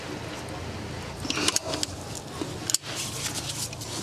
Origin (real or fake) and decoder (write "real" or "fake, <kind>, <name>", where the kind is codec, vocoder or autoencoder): real